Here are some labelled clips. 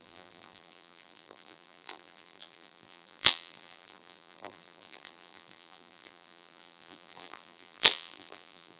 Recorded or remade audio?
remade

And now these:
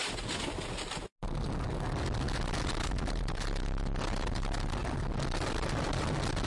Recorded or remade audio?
recorded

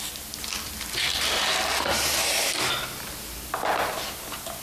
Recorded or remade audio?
recorded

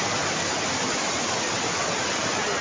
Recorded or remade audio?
recorded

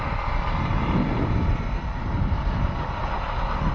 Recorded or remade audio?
recorded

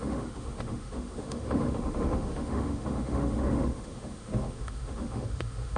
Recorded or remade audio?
remade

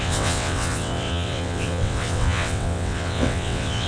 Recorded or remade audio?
remade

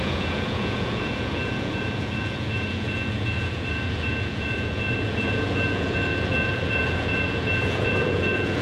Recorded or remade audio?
remade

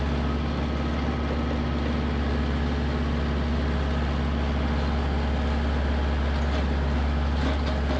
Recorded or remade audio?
recorded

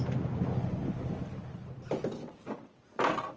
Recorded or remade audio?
recorded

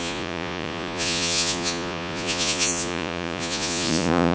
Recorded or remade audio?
remade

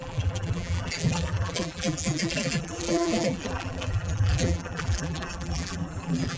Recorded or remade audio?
remade